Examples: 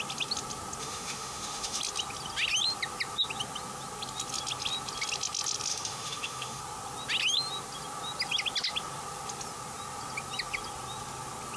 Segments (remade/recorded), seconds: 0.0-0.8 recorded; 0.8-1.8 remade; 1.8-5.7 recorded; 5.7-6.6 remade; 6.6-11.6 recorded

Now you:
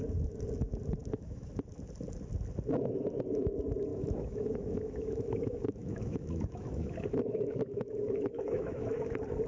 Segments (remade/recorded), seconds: 0.0-1.0 recorded; 1.0-1.5 remade; 1.5-3.9 recorded; 3.9-9.1 remade; 9.1-9.5 recorded

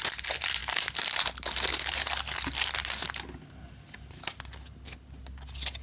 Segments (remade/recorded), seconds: 0.0-5.8 recorded

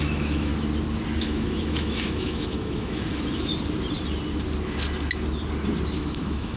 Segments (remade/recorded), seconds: 0.0-0.5 remade; 0.5-1.2 recorded; 1.2-3.5 remade; 3.5-6.0 recorded; 6.0-6.6 remade

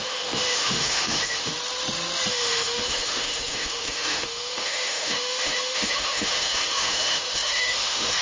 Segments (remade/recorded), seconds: 0.0-1.5 remade; 1.5-2.3 recorded; 2.3-8.2 remade

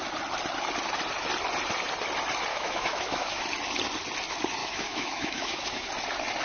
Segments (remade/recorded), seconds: 0.0-2.5 recorded; 2.5-3.4 remade; 3.4-4.6 recorded; 4.6-5.9 remade; 5.9-6.4 recorded